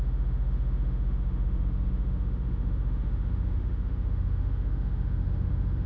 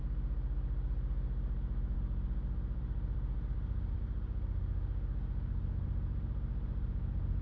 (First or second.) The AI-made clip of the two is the first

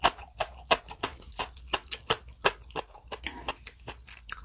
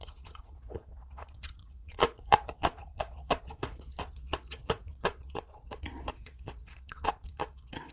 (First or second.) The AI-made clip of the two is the second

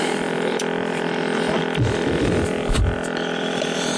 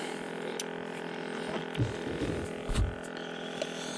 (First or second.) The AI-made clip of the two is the first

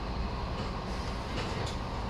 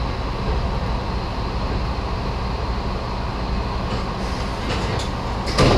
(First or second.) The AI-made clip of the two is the first